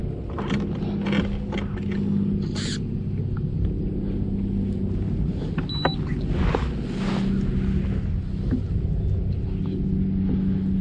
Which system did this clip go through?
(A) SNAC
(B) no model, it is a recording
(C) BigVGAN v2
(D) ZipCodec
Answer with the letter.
B